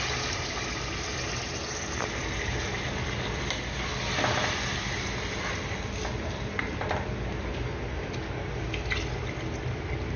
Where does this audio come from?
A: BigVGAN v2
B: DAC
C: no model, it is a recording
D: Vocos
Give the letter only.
C